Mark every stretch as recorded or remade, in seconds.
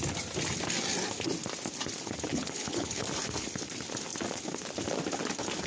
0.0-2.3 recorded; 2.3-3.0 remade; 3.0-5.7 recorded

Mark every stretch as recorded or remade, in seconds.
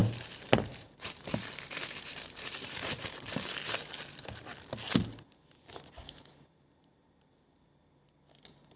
0.0-3.9 remade; 3.9-8.8 recorded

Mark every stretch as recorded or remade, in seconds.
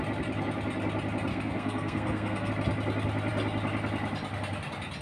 0.0-1.3 recorded; 1.3-2.5 remade; 2.5-5.0 recorded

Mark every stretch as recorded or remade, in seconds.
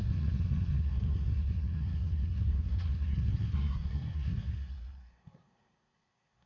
0.0-6.5 remade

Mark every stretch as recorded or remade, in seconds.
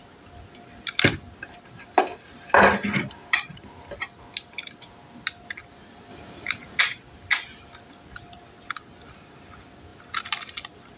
0.0-6.1 recorded; 6.1-6.8 remade; 6.8-11.0 recorded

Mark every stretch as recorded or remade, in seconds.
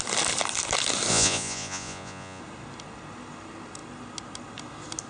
0.0-1.1 recorded; 1.1-2.4 remade; 2.4-5.1 recorded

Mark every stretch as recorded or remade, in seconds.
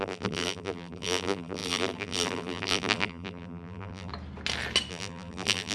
0.0-4.1 remade; 4.1-4.9 recorded; 4.9-5.7 remade